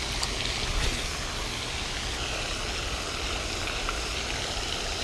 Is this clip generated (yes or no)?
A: no